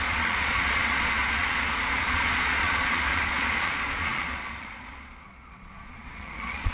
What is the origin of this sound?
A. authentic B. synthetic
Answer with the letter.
B